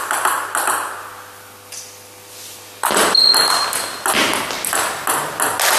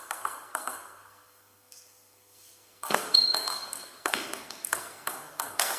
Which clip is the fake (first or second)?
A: second